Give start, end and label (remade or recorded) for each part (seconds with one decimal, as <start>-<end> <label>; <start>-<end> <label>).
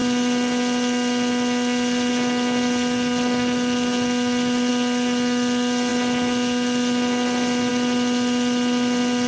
0.0-9.3 recorded